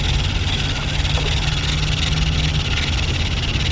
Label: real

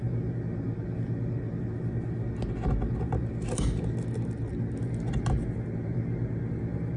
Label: real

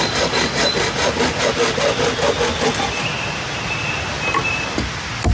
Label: real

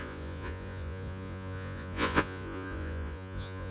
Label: fake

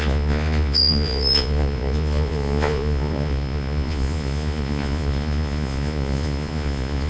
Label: fake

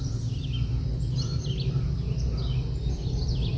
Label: real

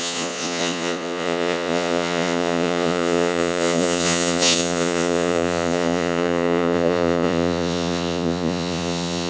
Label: fake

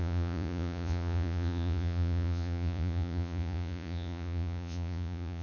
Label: fake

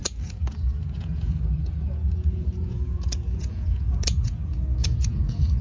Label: fake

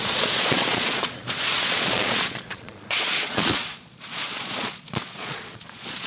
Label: fake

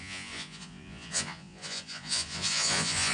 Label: fake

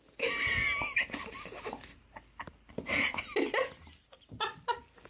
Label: real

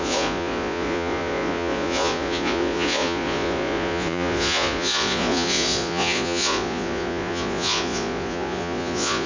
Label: fake